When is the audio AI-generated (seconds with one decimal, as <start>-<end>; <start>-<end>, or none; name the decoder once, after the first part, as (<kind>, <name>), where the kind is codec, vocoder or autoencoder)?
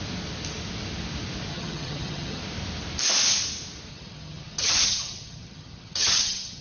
1.5-2.4 (vocoder, HiFi-GAN); 3.9-6.6